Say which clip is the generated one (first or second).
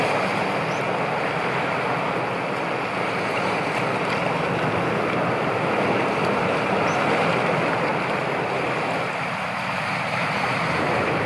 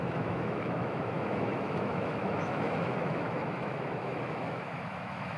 second